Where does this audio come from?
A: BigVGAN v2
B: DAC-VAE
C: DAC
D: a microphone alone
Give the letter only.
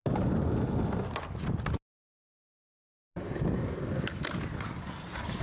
D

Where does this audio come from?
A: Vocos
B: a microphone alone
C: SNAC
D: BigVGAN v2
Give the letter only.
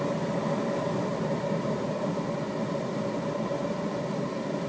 B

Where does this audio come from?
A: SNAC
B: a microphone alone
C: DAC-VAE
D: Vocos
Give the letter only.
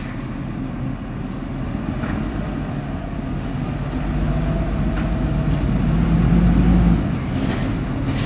B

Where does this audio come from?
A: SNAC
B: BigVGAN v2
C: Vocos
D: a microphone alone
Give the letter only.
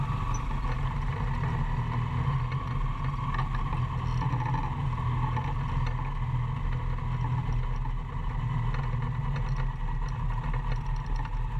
D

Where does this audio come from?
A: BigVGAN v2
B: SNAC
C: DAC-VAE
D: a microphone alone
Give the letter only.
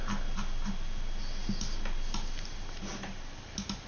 D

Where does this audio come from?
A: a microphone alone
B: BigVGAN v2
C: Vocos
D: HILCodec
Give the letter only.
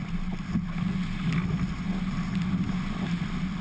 A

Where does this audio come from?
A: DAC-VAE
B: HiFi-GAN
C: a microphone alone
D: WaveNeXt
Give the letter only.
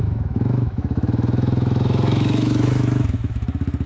A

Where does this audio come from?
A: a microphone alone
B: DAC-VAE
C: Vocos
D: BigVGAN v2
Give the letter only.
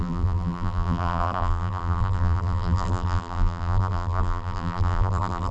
D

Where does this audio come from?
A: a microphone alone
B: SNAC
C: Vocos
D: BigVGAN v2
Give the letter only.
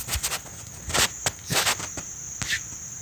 A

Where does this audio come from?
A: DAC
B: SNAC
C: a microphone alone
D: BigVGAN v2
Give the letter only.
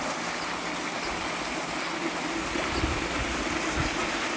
C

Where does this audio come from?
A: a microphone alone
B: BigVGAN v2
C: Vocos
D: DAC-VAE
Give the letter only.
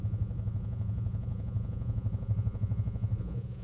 C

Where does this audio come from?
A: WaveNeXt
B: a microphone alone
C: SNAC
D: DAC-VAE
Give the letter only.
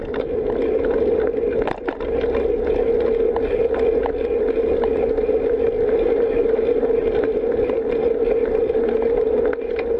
B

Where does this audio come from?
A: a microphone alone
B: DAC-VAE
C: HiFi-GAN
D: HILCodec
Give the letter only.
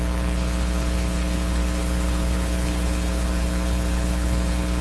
D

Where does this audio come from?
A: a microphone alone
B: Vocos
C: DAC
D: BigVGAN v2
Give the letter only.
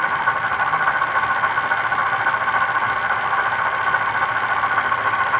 A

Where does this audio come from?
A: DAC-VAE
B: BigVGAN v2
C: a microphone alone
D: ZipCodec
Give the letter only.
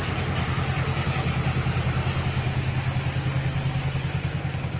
C